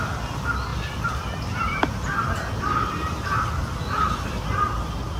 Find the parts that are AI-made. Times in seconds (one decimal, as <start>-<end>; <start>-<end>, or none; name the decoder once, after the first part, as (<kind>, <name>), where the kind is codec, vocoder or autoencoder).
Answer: 0.7-3.1 (vocoder, BigVGAN v2)